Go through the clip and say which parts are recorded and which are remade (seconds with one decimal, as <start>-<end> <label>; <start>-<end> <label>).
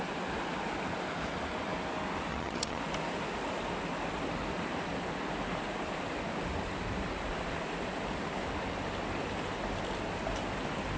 0.0-2.3 recorded; 2.3-2.8 remade; 2.8-11.0 recorded